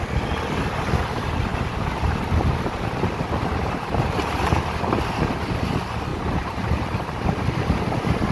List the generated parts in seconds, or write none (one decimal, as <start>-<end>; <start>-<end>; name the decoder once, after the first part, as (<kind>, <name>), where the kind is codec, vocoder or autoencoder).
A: 1.5-4.2 (vocoder, BigVGAN v2); 6.1-7.2